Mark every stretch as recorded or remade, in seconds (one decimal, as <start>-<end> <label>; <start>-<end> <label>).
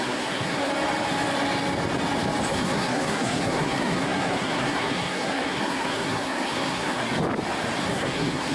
0.0-0.7 remade; 0.7-2.5 recorded; 2.5-7.0 remade; 7.0-7.8 recorded; 7.8-8.5 remade